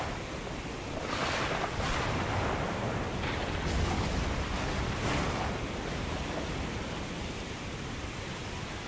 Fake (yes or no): no